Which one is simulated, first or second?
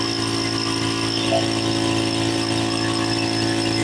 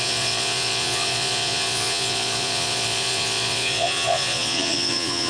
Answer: second